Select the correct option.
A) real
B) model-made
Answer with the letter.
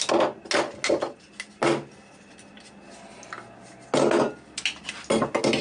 A